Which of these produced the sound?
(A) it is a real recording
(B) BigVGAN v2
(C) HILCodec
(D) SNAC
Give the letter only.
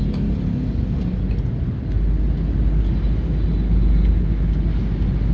A